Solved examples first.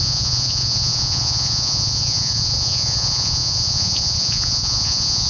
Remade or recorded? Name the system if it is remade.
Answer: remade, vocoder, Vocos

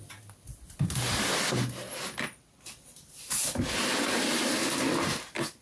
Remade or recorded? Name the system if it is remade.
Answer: recorded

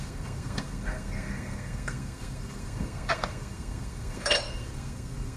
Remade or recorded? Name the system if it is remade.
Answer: remade, codec, SNAC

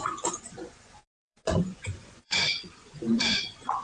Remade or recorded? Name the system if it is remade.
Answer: remade, vocoder, Vocos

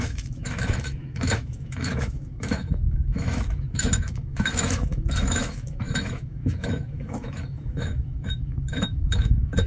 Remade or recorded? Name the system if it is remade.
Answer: remade, autoencoder, DAC-VAE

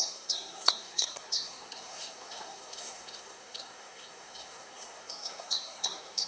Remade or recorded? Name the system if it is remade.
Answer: remade, codec, SNAC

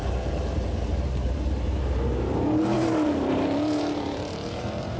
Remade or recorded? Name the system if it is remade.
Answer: remade, vocoder, BigVGAN v2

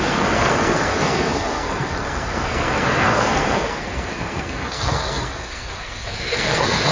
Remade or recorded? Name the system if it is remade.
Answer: remade, codec, SNAC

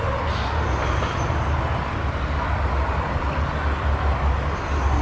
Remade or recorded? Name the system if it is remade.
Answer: recorded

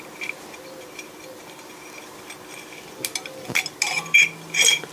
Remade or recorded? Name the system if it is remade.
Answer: recorded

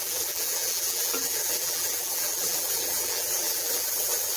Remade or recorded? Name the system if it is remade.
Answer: remade, vocoder, BigVGAN v2